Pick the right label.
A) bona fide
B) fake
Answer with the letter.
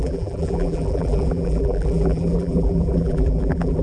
B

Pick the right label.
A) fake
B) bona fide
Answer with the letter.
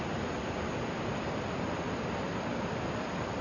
B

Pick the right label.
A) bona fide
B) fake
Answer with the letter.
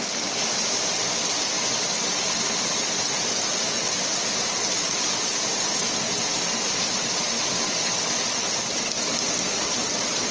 A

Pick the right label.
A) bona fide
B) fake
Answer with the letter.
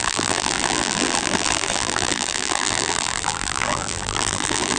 B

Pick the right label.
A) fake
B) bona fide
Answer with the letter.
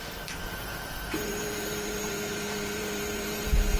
A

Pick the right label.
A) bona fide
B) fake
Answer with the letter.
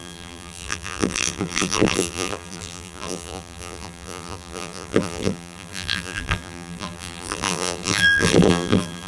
B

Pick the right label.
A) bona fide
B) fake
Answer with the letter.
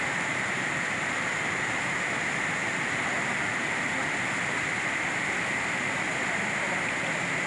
A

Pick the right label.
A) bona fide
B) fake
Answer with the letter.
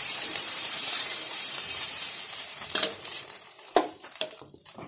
B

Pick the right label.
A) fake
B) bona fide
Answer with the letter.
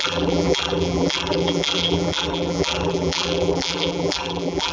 A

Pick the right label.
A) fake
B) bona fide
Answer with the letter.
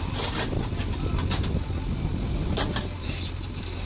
B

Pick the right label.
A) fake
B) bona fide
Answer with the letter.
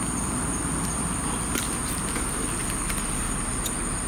B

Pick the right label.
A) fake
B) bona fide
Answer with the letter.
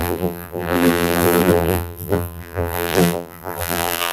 A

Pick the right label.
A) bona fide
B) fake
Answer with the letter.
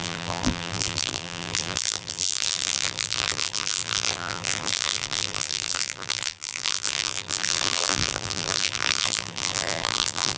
B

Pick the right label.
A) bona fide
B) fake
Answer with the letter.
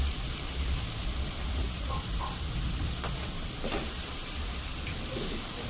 B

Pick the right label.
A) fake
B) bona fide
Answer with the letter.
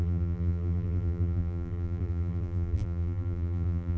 A